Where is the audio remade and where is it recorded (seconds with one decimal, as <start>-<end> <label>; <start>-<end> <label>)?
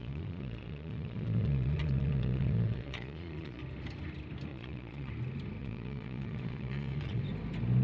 0.0-3.6 remade; 3.6-4.5 recorded; 4.5-5.1 remade; 5.1-5.6 recorded; 5.6-7.2 remade; 7.2-7.8 recorded